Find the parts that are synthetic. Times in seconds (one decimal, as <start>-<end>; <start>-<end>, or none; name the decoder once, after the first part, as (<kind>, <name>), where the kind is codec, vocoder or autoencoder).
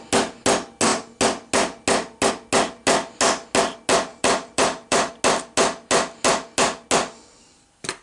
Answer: 4.1-5.1 (vocoder, BigVGAN v2)